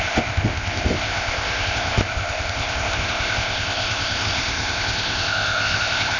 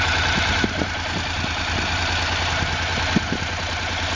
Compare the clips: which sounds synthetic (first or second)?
first